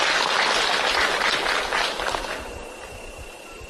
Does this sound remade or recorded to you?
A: recorded